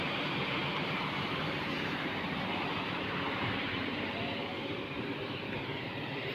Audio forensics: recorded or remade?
remade